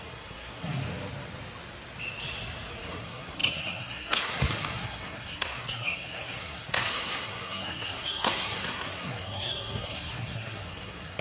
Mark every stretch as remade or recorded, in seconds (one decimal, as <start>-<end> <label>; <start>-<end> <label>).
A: 0.0-0.8 remade; 0.8-2.8 recorded; 2.8-11.2 remade